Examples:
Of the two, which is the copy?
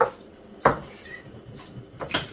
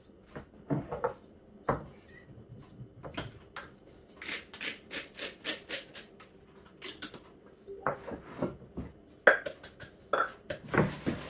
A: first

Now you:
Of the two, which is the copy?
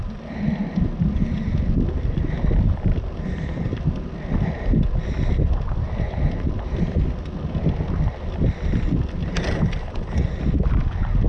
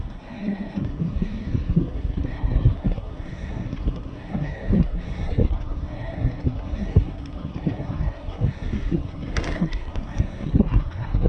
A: second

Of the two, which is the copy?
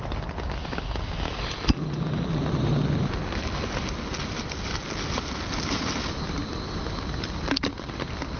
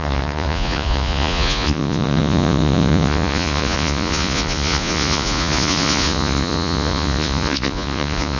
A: second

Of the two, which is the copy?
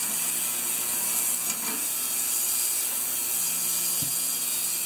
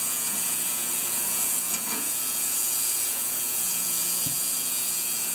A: second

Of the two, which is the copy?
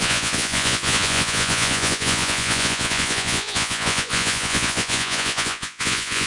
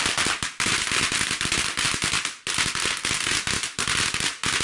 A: first